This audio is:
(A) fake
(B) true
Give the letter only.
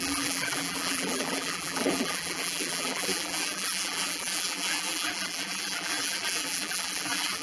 A